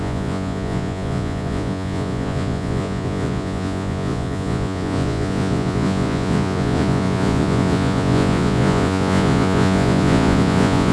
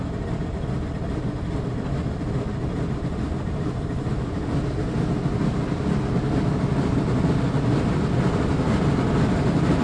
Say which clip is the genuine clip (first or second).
second